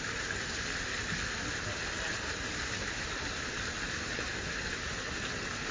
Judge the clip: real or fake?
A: real